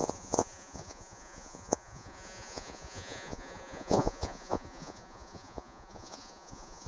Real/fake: fake